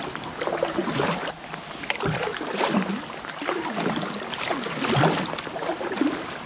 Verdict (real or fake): real